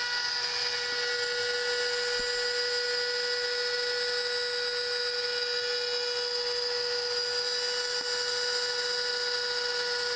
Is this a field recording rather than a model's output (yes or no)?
yes